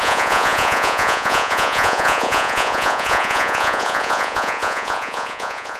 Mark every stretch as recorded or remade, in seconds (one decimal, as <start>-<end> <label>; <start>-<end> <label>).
0.0-5.8 remade